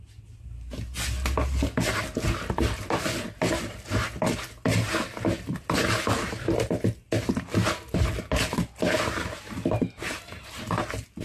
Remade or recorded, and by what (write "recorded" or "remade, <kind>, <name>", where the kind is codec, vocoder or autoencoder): recorded